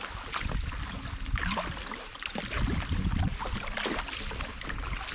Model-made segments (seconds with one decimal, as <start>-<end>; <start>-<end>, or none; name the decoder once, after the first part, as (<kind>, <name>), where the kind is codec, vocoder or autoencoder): none